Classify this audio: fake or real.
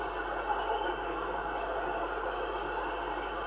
real